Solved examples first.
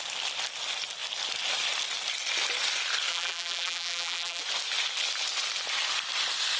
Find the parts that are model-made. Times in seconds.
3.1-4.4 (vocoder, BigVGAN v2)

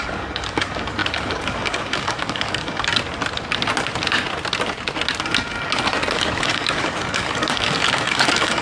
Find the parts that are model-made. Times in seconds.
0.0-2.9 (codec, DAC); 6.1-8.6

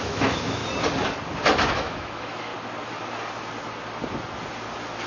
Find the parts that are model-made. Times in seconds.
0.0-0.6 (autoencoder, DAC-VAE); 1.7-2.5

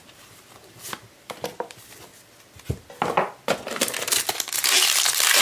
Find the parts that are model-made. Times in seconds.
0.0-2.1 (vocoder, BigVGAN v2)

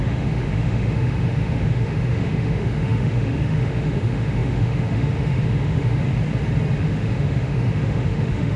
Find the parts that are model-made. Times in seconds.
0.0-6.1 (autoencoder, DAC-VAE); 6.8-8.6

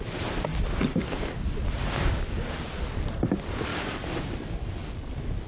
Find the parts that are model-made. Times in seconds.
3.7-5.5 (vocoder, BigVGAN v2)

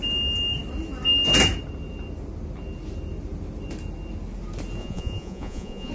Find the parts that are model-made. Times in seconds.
4.8-5.9 (vocoder, Vocos)